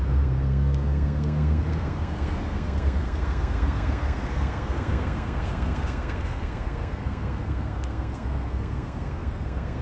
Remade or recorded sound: remade